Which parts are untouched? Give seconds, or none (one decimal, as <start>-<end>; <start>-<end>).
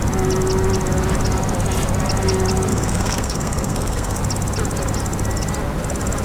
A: 0.0-2.7; 4.2-6.2